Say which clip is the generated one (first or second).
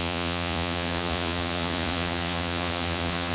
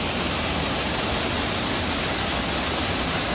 first